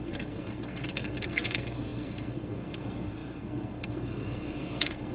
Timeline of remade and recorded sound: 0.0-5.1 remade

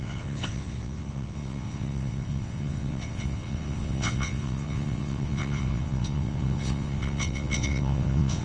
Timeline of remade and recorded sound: 0.0-8.4 remade

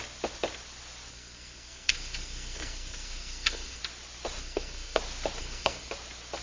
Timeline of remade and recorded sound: 0.0-1.1 recorded; 1.1-3.8 remade; 3.8-4.4 recorded; 4.4-5.0 remade; 5.0-5.4 recorded; 5.4-5.9 remade; 5.9-6.4 recorded

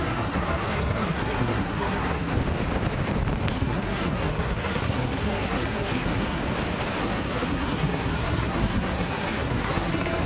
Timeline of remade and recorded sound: 0.0-2.4 remade; 2.4-3.5 recorded; 3.5-6.4 remade; 6.4-7.0 recorded; 7.0-10.3 remade

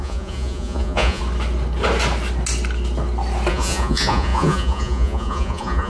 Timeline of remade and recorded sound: 0.0-1.2 remade; 1.2-3.5 recorded; 3.5-5.9 remade

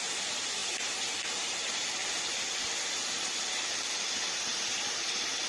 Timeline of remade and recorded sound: 0.0-2.0 remade; 2.0-5.5 recorded

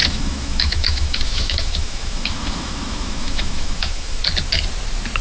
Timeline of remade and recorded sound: 0.0-4.2 remade; 4.2-5.2 recorded